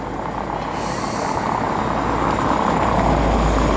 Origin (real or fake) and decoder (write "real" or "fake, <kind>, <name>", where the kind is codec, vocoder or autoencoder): real